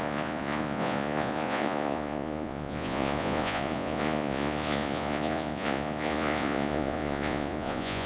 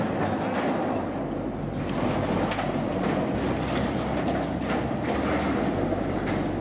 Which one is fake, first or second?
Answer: first